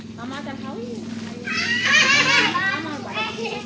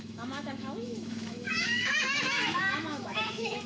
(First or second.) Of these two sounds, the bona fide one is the first